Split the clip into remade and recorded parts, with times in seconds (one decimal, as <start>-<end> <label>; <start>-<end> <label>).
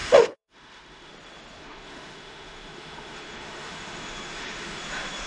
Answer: 0.0-1.1 remade; 1.1-1.6 recorded; 1.6-4.8 remade; 4.8-5.3 recorded